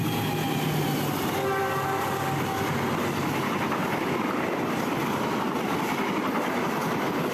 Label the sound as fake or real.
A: real